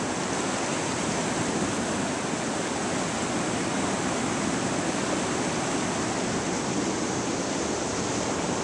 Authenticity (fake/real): real